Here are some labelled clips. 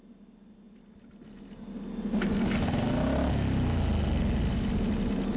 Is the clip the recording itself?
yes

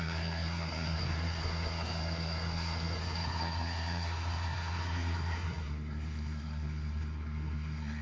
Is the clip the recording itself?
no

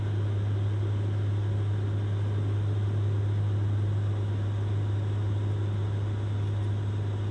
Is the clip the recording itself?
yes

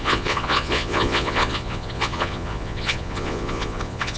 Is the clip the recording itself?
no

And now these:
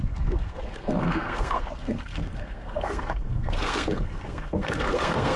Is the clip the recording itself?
no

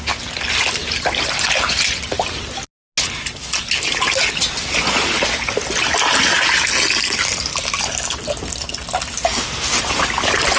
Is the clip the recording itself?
yes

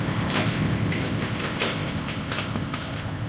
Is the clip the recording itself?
no